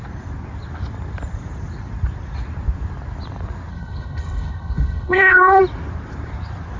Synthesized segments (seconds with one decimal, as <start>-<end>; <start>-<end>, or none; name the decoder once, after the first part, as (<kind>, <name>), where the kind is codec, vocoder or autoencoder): 3.7-5.6 (codec, HILCodec)